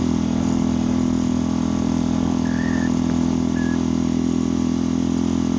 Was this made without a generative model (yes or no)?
yes